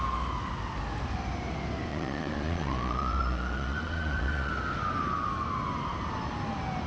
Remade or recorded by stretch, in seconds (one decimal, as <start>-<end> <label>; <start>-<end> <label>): 0.0-1.9 recorded; 1.9-4.5 remade; 4.5-6.9 recorded